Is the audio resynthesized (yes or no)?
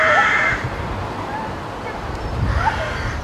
yes